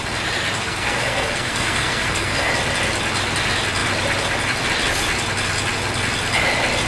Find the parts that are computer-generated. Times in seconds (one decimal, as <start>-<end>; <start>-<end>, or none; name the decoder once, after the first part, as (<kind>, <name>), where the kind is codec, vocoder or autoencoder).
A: 0.6-2.5 (codec, SNAC)